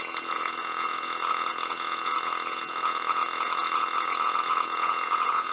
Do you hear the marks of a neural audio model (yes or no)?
yes